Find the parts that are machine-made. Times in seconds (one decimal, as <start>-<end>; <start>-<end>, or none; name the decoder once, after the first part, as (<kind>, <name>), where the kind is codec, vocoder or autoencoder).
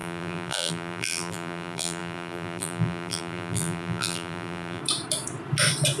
0.0-4.8 (vocoder, BigVGAN v2)